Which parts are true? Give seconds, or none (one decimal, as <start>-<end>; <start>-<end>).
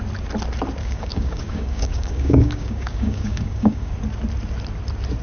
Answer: 0.0-0.8; 3.9-5.2